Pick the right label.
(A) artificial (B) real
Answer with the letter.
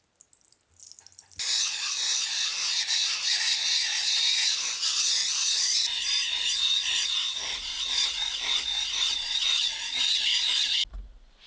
B